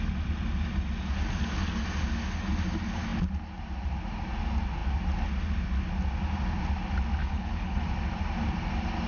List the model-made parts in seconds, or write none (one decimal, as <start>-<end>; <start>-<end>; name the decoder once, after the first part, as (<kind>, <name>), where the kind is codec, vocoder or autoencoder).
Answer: 7.2-7.8 (codec, HILCodec)